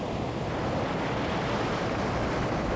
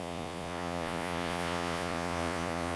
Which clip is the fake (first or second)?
second